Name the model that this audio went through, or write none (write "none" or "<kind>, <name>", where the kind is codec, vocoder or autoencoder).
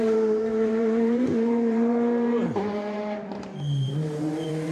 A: vocoder, BigVGAN v2